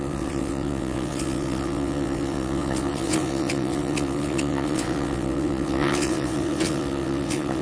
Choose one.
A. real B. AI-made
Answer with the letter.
B